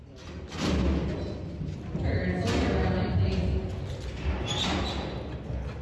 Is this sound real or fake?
real